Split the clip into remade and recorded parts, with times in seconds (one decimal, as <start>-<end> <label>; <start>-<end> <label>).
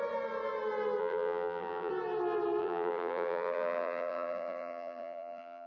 0.0-1.0 recorded; 1.0-1.9 remade; 1.9-2.6 recorded; 2.6-5.7 remade